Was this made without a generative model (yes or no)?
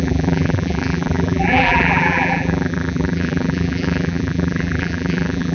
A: no